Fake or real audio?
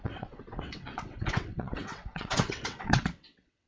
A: fake